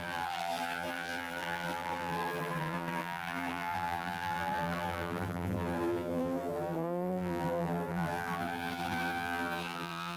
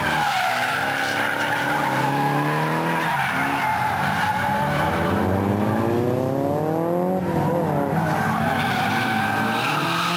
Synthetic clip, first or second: first